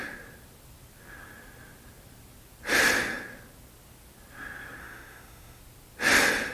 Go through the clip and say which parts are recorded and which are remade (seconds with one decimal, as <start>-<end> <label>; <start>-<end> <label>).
0.0-4.8 recorded; 4.8-5.6 remade; 5.6-6.5 recorded

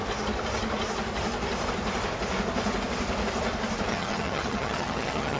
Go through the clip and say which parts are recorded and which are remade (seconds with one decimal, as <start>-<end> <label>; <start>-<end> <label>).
0.0-3.9 recorded; 3.9-5.4 remade

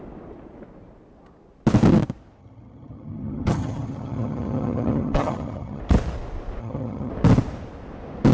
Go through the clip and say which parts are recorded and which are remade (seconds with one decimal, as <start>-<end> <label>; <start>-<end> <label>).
0.0-2.4 recorded; 2.4-5.8 remade; 5.8-6.6 recorded; 6.6-7.1 remade; 7.1-8.3 recorded